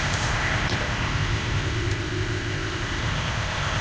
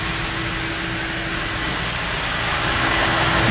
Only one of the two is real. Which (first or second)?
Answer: second